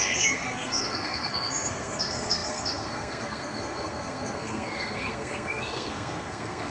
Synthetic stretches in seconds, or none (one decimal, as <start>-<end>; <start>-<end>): 0.0-6.7